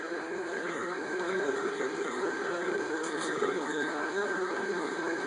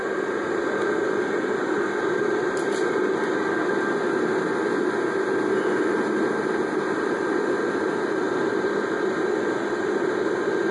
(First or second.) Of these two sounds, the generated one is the first